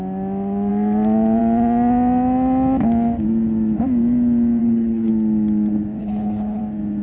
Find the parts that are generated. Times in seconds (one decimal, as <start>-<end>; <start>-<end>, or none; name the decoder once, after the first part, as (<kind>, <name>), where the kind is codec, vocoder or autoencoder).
4.6-5.1 (codec, HILCodec); 6.0-6.6